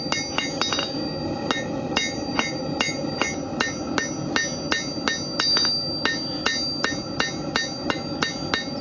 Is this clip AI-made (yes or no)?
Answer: no